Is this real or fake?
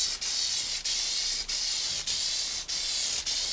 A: real